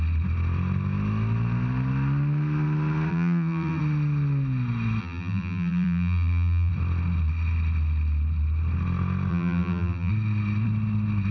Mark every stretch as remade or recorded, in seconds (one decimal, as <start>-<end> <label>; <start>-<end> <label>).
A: 0.0-3.1 recorded; 3.1-3.8 remade; 3.8-5.0 recorded; 5.0-6.7 remade; 6.7-9.3 recorded; 9.3-10.1 remade; 10.1-11.3 recorded